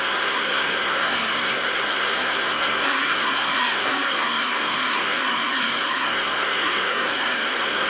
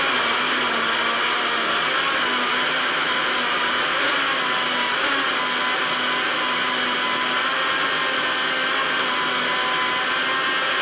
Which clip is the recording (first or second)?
second